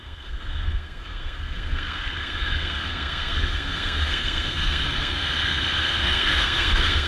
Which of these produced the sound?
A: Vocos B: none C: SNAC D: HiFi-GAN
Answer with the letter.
C